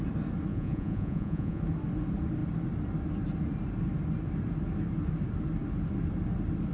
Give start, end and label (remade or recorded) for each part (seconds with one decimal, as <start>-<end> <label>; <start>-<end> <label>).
0.0-0.5 recorded; 0.5-1.6 remade; 1.6-6.7 recorded